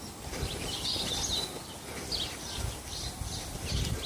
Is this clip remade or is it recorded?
recorded